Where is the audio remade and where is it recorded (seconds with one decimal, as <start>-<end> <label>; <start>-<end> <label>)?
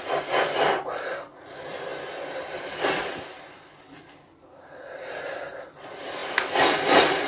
0.0-6.2 recorded; 6.2-7.3 remade